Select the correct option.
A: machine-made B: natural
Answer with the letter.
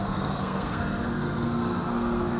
A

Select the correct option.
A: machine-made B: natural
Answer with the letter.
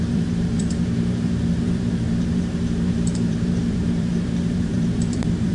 A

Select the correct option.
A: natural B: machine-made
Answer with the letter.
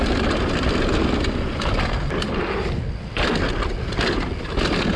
A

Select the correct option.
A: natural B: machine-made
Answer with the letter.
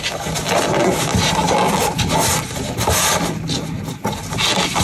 A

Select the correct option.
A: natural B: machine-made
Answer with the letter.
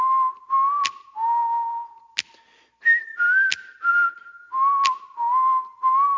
A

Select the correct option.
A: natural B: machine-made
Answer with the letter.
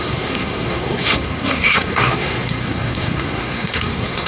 B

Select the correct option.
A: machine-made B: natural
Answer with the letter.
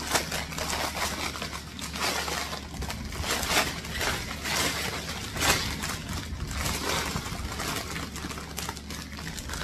B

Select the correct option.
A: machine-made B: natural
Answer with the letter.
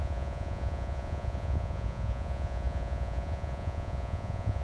A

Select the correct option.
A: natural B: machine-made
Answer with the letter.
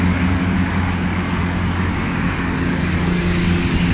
B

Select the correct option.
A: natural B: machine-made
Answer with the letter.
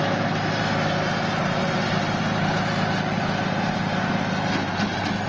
A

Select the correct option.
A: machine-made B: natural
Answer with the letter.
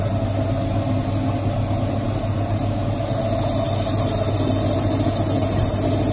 B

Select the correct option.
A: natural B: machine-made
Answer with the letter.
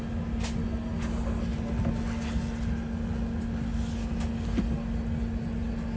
A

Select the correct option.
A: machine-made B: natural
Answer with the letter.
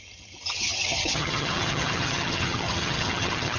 A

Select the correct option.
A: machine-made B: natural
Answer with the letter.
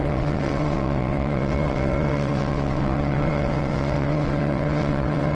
A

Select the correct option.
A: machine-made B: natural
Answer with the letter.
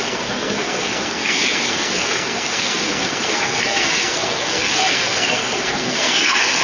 A